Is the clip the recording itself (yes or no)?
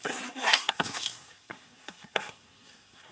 no